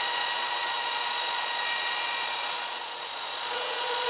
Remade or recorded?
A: remade